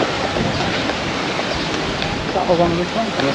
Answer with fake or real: real